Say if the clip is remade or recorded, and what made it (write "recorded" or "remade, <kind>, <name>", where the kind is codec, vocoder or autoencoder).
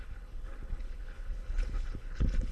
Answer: remade, codec, HILCodec